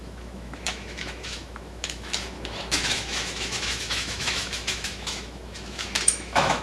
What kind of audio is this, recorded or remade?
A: remade